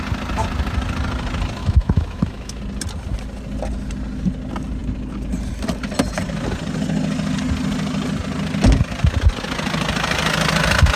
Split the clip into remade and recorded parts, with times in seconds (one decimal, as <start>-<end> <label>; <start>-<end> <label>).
0.0-1.6 recorded; 1.6-2.6 remade; 2.6-11.0 recorded